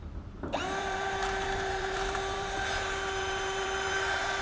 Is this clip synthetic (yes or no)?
yes